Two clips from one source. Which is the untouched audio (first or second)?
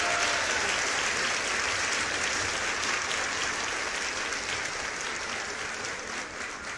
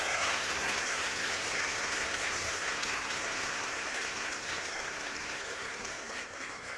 first